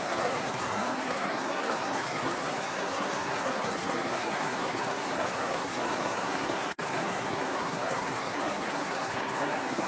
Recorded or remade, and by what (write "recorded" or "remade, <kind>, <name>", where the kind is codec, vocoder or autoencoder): remade, codec, SNAC